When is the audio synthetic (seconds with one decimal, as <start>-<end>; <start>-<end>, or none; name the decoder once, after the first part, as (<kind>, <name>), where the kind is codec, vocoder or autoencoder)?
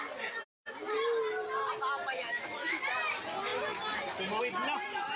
2.1-2.8 (autoencoder, DAC-VAE)